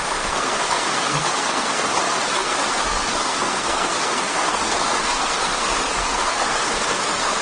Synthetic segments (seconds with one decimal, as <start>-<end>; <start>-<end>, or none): 0.0-7.4